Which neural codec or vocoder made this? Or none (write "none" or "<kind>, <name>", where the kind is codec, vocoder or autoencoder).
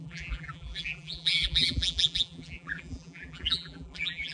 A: vocoder, BigVGAN v2